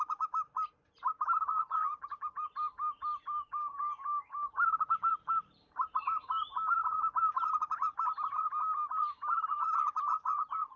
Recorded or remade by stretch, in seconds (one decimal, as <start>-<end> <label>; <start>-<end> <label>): 0.0-10.8 remade